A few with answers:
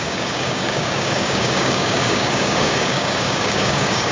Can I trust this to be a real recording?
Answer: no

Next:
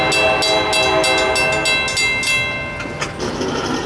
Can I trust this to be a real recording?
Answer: yes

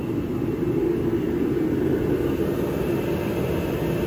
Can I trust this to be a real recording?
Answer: yes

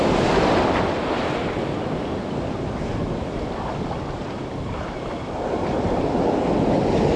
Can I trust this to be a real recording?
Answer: yes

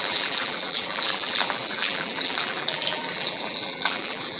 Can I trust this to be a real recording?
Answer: no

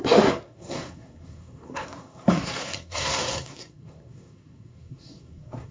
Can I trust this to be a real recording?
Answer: no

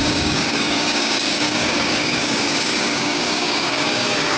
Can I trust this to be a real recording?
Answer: no